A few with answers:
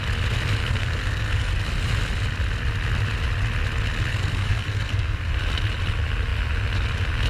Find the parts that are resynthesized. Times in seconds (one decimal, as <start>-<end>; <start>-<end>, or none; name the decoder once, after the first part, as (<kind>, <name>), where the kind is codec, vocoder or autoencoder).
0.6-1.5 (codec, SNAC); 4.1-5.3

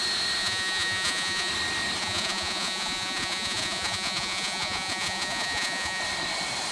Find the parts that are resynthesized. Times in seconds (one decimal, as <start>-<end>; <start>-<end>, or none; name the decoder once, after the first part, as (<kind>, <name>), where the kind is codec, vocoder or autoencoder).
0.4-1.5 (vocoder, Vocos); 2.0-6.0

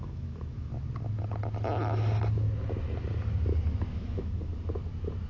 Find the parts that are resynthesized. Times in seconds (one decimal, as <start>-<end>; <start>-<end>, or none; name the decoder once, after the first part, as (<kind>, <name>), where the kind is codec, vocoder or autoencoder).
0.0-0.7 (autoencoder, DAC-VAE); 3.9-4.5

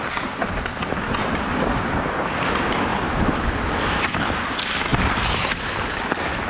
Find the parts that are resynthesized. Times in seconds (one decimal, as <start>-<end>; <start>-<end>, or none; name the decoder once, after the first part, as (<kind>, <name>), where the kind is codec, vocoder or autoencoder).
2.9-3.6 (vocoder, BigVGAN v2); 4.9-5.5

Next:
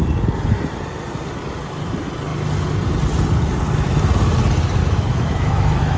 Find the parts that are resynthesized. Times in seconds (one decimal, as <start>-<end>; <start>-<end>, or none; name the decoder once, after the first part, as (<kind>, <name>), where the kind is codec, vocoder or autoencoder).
4.8-6.0 (autoencoder, DAC-VAE)